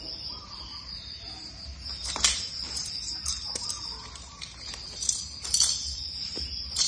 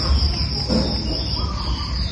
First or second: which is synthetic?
first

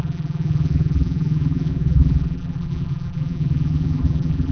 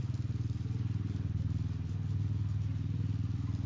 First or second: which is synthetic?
first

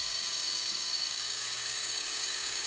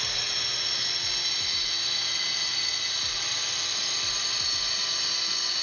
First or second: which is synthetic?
first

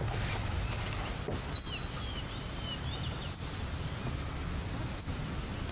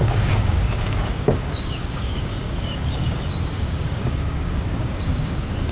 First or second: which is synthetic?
second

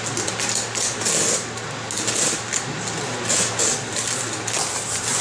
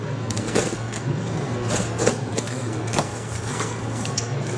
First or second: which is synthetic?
second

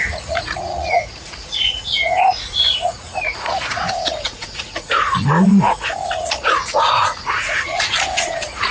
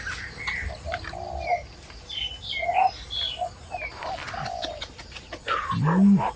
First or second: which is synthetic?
first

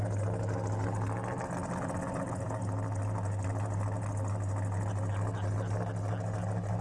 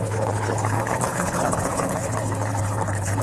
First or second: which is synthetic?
second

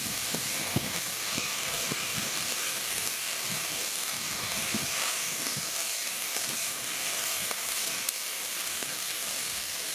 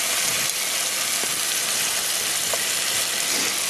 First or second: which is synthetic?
first